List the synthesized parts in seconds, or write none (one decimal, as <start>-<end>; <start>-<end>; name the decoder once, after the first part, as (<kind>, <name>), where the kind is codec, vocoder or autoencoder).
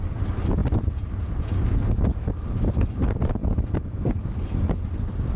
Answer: none